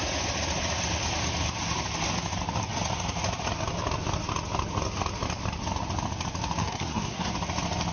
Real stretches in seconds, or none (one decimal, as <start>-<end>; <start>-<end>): 0.0-6.6; 7.3-7.9